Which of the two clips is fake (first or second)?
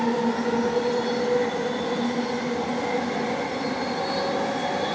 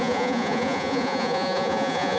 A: second